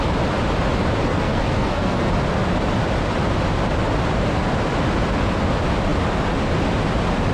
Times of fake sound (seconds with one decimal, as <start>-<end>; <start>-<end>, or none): 1.1-2.1